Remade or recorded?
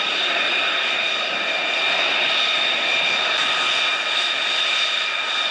recorded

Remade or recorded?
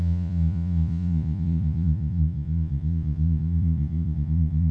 remade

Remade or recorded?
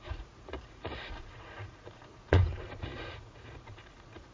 remade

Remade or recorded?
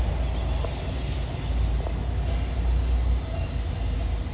recorded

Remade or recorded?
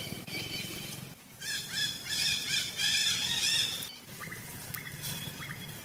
remade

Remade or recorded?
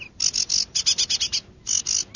recorded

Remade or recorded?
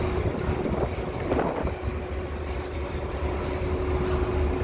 recorded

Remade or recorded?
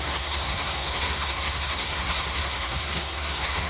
remade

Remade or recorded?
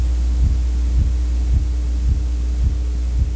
recorded